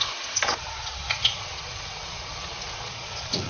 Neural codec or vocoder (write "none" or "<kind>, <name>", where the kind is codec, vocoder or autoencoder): vocoder, Vocos